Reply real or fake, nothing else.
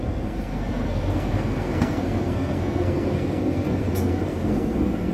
fake